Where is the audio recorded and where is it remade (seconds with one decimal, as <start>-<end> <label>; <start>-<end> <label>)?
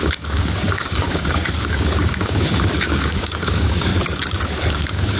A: 0.0-3.9 remade; 3.9-4.7 recorded; 4.7-5.2 remade